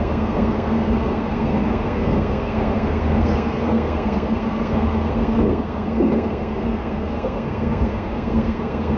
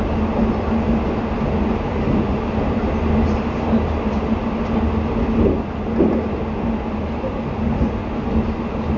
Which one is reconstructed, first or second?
first